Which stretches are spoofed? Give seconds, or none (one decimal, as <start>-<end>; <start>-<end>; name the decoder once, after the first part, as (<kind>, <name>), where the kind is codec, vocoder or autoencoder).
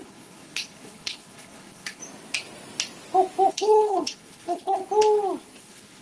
0.0-2.0 (codec, HILCodec); 3.5-4.8; 5.6-6.0